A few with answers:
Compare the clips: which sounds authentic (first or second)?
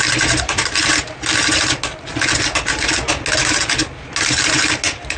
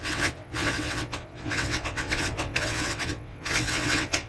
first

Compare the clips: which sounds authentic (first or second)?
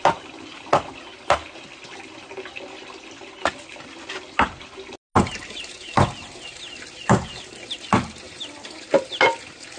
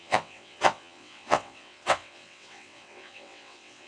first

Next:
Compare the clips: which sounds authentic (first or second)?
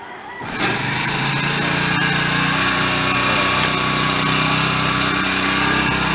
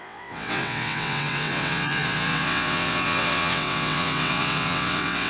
first